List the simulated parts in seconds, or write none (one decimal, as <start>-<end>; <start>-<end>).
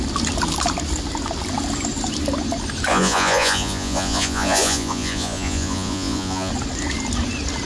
2.9-6.5